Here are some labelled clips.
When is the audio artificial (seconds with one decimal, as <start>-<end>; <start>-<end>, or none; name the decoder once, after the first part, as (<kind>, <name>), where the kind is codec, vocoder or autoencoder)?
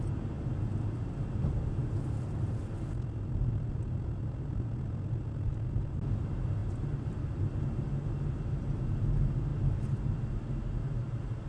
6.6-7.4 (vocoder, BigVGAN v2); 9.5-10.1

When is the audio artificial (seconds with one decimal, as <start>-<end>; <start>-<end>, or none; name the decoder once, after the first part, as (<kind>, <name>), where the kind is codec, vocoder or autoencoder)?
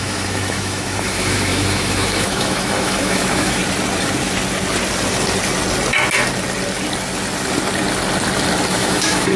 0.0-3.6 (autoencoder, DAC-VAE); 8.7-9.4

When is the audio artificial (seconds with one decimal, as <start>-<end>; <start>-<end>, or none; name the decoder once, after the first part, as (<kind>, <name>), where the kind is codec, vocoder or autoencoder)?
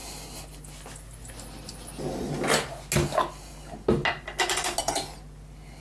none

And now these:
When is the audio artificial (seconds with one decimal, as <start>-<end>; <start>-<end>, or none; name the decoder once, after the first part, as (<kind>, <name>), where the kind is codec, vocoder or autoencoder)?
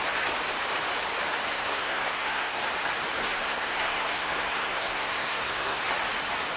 1.5-2.6 (codec, SNAC); 3.2-5.8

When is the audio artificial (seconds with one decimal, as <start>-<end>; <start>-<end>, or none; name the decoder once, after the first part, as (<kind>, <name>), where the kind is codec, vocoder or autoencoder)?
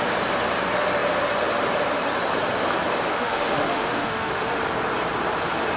3.1-4.6 (autoencoder, DAC-VAE)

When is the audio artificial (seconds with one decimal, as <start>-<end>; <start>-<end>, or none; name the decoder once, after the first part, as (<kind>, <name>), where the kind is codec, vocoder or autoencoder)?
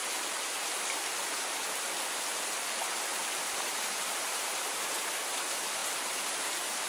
3.1-5.1 (vocoder, BigVGAN v2); 5.8-6.9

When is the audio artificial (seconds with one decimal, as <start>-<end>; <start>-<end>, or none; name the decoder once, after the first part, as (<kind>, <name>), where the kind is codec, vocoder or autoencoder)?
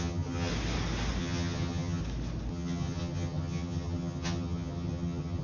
0.0-0.5 (vocoder, HiFi-GAN); 1.2-2.0; 2.5-5.4